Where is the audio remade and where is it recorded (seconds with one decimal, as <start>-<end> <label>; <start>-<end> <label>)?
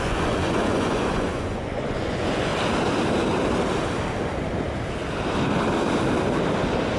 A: 0.0-2.5 remade; 2.5-7.0 recorded